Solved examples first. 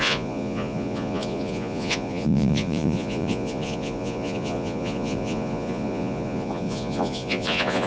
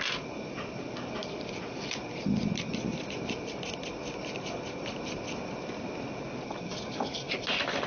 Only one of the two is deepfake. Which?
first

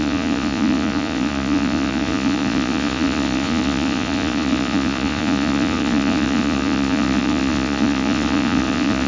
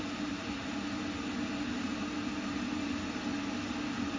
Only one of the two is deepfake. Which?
first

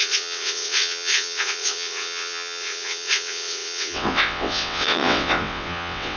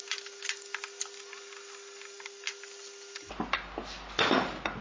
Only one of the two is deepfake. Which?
first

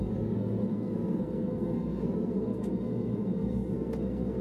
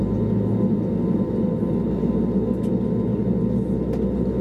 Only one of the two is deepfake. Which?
first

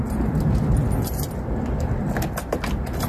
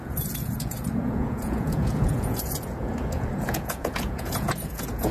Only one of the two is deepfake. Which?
second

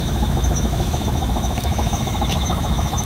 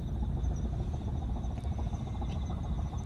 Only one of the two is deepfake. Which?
first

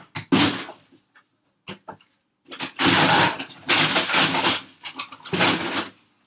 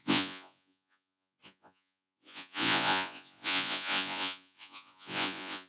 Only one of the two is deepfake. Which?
second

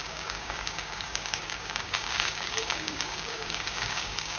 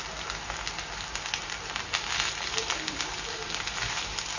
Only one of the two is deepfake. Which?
first